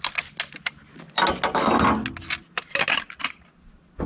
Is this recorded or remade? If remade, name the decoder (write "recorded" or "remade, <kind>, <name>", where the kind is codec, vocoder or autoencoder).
recorded